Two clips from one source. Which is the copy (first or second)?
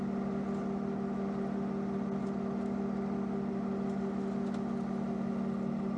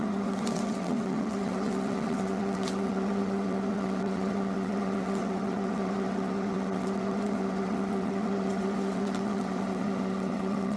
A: second